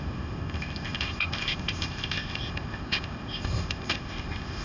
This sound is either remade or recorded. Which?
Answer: remade